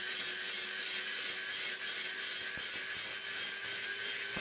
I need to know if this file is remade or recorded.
recorded